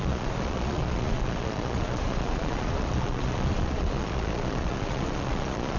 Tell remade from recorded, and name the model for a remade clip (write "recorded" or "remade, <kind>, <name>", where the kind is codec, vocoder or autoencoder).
remade, vocoder, Vocos